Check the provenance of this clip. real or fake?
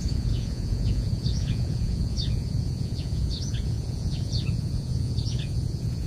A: fake